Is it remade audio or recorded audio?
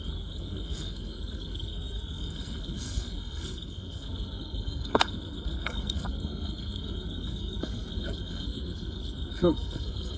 remade